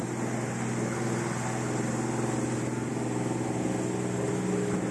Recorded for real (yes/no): yes